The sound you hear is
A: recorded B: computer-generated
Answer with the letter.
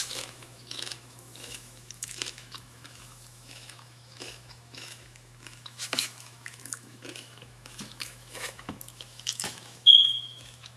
B